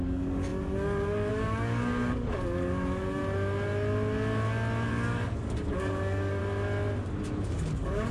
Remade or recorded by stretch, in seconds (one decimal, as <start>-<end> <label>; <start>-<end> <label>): 0.0-3.2 remade; 3.2-4.9 recorded; 4.9-6.4 remade; 6.4-7.2 recorded; 7.2-8.1 remade